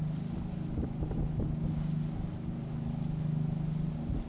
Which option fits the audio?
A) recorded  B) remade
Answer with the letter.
A